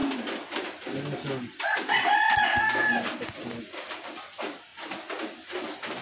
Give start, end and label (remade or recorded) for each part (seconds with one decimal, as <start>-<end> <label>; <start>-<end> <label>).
0.0-6.0 recorded